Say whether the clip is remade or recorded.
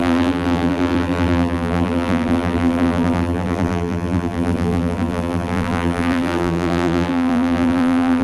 remade